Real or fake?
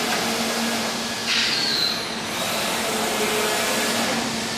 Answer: real